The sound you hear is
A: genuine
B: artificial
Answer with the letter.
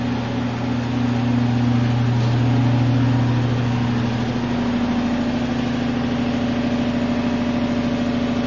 A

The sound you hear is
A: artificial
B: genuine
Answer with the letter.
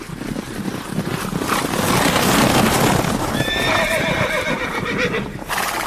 B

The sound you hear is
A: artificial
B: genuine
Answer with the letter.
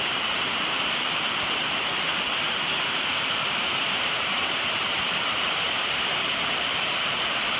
A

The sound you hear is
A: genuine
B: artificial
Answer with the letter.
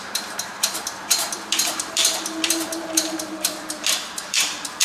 B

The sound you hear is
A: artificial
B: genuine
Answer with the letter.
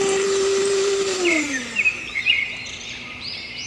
A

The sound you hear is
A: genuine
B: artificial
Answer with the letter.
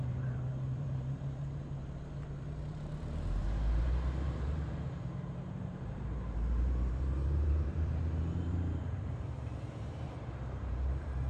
B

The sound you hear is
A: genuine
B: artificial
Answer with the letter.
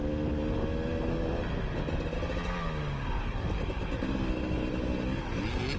A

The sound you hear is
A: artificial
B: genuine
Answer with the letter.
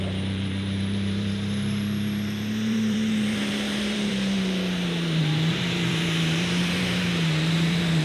A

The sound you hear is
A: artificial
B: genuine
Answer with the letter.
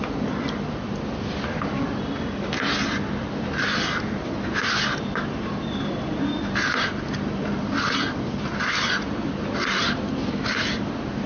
B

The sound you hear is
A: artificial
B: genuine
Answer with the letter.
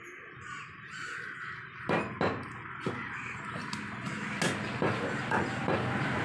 B